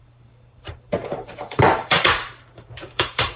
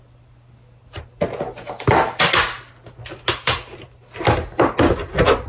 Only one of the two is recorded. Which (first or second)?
second